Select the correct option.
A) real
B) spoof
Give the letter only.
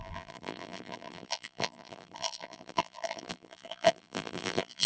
B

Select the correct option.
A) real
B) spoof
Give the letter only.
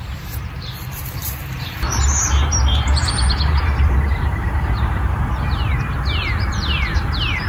B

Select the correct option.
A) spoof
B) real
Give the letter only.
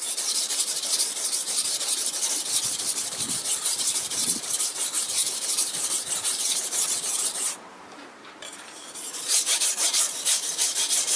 A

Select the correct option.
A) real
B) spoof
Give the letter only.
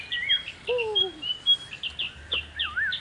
A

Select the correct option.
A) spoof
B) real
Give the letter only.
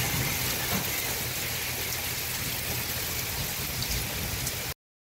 B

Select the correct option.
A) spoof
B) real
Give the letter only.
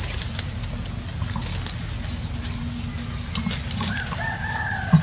B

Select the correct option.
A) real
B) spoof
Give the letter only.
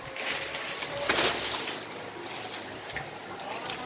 B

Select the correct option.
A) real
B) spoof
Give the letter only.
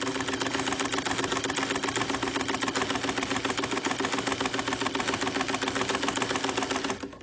A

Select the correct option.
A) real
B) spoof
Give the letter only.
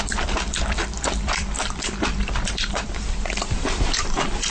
B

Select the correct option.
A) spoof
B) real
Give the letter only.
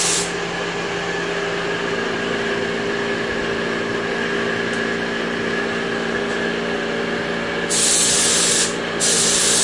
B